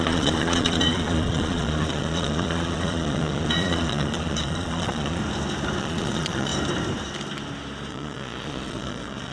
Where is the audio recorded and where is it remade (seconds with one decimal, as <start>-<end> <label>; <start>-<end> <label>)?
0.0-5.2 remade; 5.2-5.8 recorded; 5.8-6.5 remade; 6.5-7.9 recorded; 7.9-9.3 remade